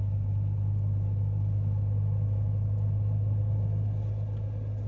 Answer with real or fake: real